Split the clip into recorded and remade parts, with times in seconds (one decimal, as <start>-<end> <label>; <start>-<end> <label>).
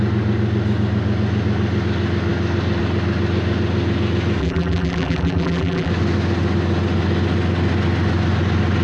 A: 0.0-4.4 recorded; 4.4-5.9 remade; 5.9-8.8 recorded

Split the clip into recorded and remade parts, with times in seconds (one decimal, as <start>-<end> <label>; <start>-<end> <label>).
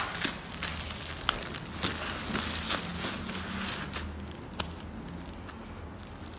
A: 0.0-6.4 recorded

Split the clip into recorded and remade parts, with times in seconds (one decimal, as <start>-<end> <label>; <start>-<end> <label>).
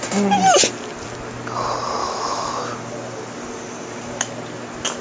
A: 0.0-2.0 recorded; 2.0-2.5 remade; 2.5-5.0 recorded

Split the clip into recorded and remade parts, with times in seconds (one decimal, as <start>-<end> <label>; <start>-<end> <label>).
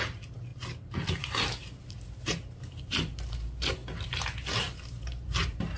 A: 0.0-0.5 remade; 0.5-1.2 recorded; 1.2-5.8 remade